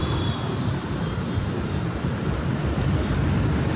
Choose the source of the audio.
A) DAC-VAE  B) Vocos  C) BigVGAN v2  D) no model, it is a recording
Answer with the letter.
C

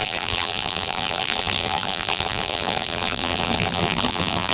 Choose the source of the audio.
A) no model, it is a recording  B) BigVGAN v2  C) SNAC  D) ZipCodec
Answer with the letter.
B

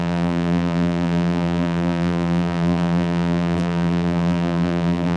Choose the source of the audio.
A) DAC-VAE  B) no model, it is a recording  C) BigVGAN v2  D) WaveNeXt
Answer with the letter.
C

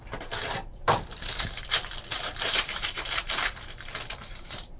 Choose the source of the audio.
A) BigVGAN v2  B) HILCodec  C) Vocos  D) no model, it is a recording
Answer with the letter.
A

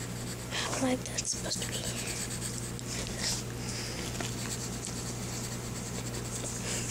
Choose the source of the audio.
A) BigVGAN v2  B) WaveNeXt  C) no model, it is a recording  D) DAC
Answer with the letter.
C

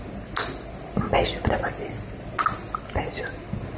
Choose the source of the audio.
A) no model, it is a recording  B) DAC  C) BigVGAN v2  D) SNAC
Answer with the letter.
A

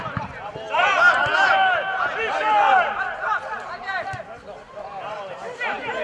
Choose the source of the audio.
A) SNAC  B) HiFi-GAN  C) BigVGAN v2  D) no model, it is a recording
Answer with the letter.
D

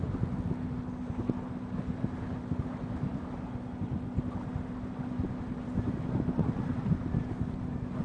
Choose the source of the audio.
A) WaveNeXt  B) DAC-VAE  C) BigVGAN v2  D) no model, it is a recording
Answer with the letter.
D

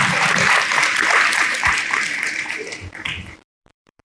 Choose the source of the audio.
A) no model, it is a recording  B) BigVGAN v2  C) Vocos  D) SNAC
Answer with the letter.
B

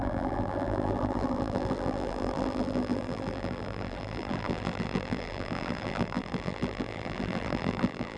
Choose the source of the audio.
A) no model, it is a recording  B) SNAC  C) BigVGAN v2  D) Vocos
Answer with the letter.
C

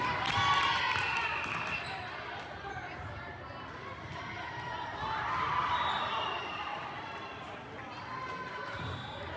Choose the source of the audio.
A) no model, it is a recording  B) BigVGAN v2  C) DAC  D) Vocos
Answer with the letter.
A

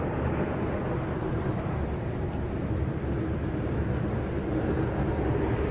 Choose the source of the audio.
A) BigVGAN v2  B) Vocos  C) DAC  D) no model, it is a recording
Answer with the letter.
D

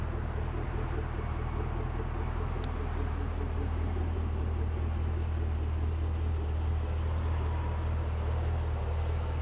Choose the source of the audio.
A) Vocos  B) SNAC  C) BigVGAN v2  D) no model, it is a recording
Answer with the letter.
D